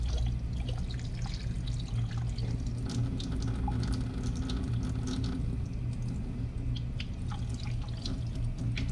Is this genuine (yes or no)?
yes